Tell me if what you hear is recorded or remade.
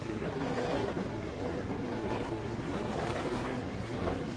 remade